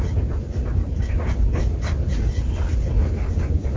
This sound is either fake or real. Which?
real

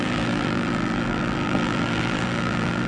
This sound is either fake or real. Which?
fake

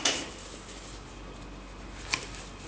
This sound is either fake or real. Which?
real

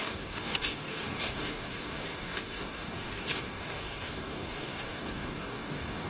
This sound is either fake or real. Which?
fake